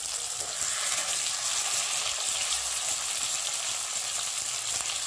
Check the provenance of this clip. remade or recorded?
recorded